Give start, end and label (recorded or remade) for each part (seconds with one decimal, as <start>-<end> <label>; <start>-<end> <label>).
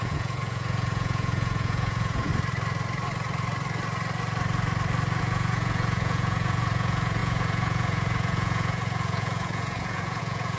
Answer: 0.0-2.3 remade; 2.3-5.2 recorded; 5.2-10.6 remade